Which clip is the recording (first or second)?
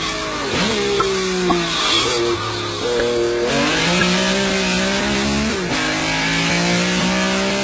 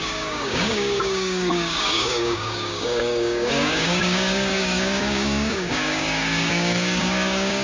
first